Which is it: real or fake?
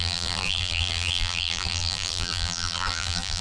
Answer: fake